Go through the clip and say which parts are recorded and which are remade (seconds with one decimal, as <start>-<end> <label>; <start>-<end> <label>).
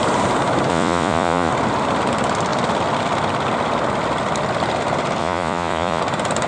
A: 0.0-0.7 recorded; 0.7-1.5 remade; 1.5-5.2 recorded; 5.2-6.0 remade; 6.0-6.5 recorded